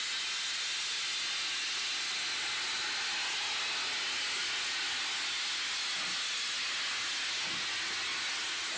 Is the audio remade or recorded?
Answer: recorded